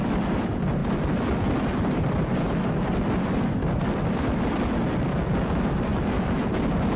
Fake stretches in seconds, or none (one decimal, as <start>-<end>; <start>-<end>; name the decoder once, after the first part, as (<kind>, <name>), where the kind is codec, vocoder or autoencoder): none